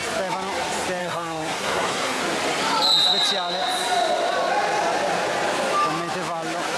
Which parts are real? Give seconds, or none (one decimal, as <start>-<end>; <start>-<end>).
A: 0.0-1.0; 2.2-6.8